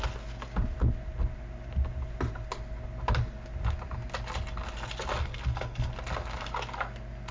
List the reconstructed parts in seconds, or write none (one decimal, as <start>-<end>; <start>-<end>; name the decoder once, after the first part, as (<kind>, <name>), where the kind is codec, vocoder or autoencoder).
5.2-5.9 (codec, SNAC)